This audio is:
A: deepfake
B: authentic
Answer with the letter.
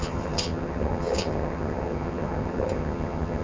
A